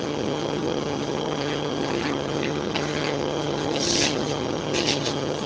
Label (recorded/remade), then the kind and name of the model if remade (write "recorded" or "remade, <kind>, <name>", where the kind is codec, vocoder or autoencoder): remade, vocoder, HiFi-GAN